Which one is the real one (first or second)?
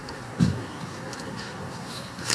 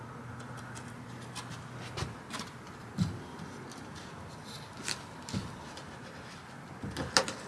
second